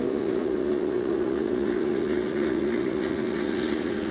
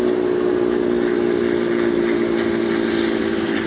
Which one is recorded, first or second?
second